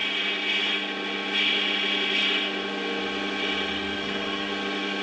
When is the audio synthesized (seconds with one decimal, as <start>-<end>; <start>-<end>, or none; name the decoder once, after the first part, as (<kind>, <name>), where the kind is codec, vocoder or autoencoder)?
3.7-4.5 (codec, SNAC)